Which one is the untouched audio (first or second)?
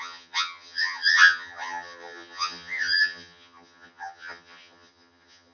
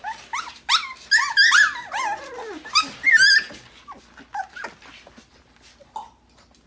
second